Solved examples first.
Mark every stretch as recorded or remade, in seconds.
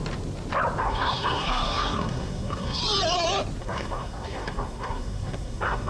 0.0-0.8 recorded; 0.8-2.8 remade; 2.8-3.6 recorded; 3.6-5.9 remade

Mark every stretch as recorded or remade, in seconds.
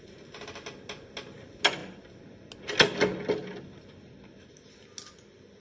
0.0-5.6 recorded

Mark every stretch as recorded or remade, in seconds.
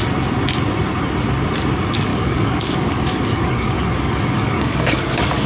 0.0-2.1 recorded; 2.1-5.5 remade